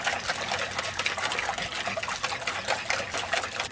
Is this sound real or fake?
real